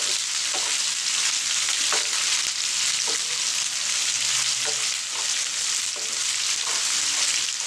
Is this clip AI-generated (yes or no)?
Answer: no